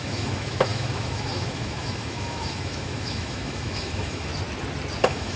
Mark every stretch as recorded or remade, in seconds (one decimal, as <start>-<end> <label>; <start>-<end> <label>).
0.0-4.3 remade; 4.3-5.0 recorded; 5.0-5.4 remade